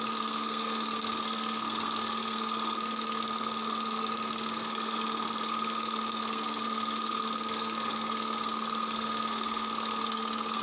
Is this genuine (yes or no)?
no